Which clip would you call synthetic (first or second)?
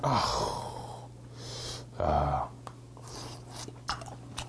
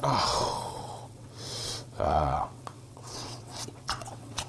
second